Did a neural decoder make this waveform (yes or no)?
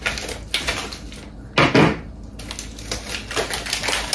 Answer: no